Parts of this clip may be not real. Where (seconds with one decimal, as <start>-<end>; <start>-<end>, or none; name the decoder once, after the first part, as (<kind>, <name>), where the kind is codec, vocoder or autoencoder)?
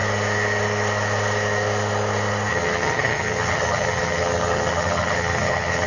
2.5-5.9 (vocoder, HiFi-GAN)